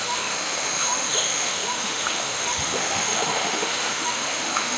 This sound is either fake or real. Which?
fake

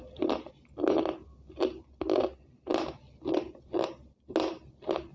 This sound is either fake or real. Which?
real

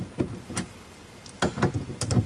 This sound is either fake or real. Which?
real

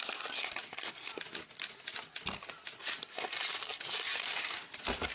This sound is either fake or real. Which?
real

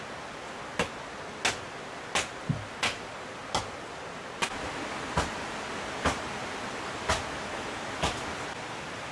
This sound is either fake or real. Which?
real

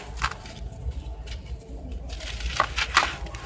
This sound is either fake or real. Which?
real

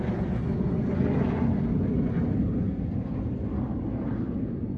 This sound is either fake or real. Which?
real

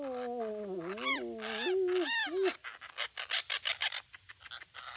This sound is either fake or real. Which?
real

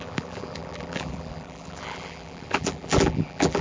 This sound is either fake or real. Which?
fake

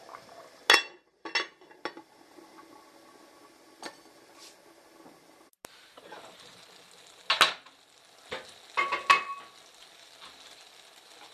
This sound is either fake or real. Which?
real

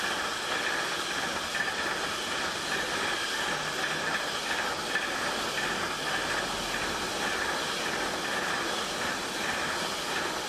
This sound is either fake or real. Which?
real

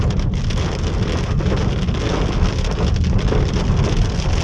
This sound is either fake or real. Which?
real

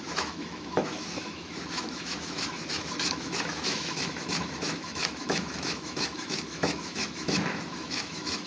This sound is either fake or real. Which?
fake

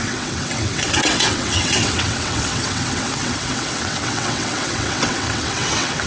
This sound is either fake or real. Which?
fake